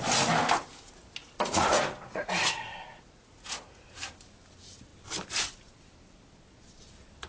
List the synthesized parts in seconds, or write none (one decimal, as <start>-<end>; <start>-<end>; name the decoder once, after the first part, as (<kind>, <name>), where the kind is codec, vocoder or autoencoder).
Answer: 1.2-3.8 (vocoder, Vocos)